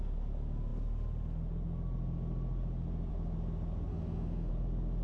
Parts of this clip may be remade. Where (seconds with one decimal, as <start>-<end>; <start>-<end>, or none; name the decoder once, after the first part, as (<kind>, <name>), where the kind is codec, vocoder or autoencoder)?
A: 3.9-4.5 (autoencoder, DAC-VAE)